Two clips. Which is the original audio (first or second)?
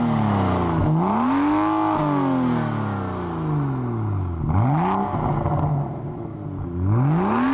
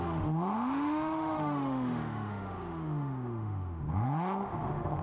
first